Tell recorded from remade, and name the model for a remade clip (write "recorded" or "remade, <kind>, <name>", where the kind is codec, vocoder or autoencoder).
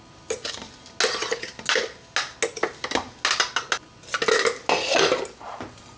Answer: recorded